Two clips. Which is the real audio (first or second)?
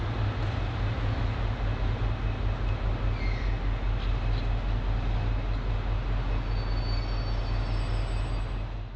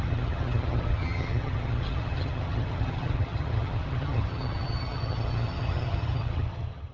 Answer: first